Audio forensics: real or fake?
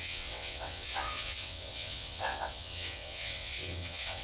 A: fake